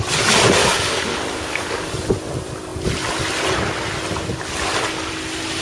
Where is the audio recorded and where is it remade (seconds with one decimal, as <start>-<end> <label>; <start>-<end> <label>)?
0.0-0.6 recorded; 0.6-1.9 remade; 1.9-5.6 recorded